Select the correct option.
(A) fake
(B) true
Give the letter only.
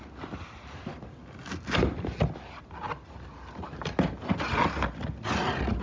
B